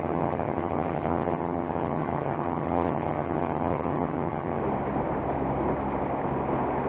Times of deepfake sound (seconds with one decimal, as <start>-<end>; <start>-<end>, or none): 0.0-4.6